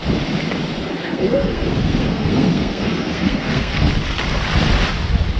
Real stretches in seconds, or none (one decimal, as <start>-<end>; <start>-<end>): 0.0-1.0; 3.9-5.4